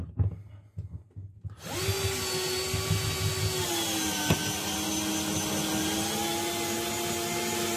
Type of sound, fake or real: real